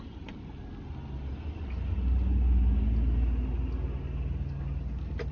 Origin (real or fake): real